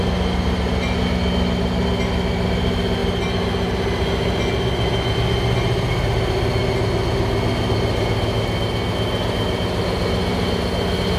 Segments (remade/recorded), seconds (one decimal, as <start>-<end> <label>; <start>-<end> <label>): 0.0-11.2 recorded